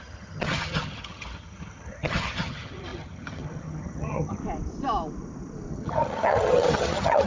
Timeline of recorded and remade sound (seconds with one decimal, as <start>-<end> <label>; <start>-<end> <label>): 0.0-4.4 remade; 4.4-5.7 recorded; 5.7-7.3 remade